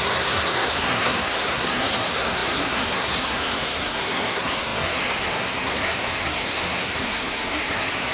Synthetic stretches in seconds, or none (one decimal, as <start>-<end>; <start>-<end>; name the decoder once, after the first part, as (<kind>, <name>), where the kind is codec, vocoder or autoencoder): 0.0-8.1 (codec, SNAC)